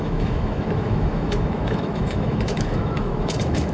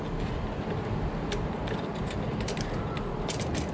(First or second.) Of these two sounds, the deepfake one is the first